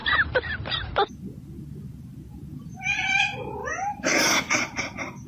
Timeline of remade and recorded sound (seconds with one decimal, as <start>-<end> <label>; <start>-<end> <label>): 0.0-3.2 remade; 3.2-3.6 recorded; 3.6-4.8 remade; 4.8-5.3 recorded